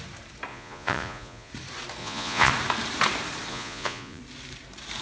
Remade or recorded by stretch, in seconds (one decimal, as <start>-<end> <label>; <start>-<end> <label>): 0.0-0.5 recorded; 0.5-1.5 remade; 1.5-2.0 recorded; 2.0-2.5 remade; 2.5-3.5 recorded; 3.5-4.2 remade; 4.2-5.0 recorded